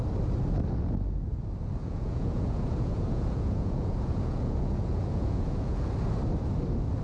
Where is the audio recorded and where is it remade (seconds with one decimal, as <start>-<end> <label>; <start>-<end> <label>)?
0.0-1.8 recorded; 1.8-5.9 remade; 5.9-7.0 recorded